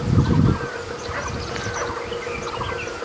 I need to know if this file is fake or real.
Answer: real